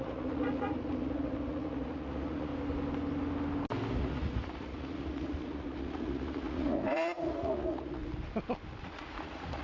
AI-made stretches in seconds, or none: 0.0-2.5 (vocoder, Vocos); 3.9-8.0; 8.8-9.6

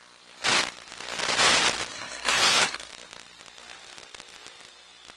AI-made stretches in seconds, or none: 1.9-2.9 (codec, SNAC)

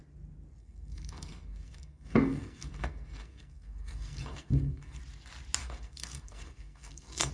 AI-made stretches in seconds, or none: 0.6-5.0 (codec, SNAC); 5.6-7.3

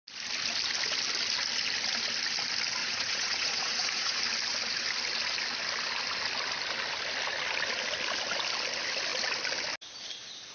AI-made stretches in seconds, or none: 2.8-4.2 (vocoder, Vocos)

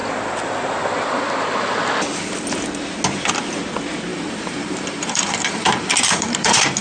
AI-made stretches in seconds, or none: 4.1-6.8 (vocoder, BigVGAN v2)